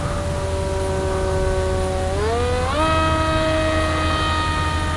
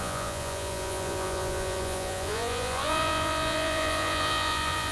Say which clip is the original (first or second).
first